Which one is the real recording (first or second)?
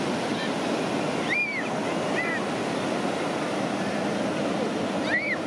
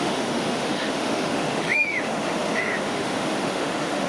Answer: first